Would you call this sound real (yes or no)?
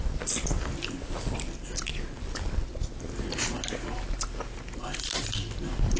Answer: yes